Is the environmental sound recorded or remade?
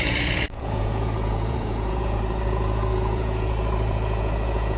remade